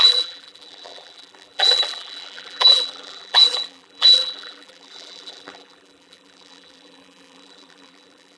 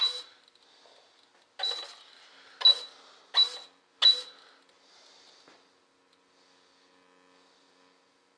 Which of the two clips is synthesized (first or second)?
first